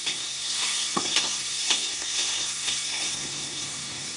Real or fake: fake